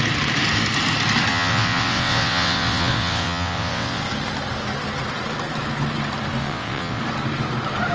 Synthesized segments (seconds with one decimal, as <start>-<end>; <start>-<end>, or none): 1.3-4.0; 6.4-7.0